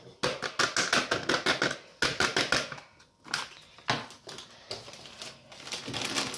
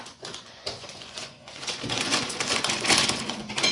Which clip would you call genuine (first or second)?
first